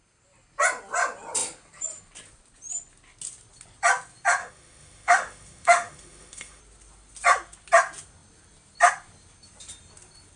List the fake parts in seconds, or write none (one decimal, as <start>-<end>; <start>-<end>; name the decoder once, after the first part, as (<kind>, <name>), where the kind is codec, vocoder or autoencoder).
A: 4.4-6.6 (autoencoder, DAC-VAE)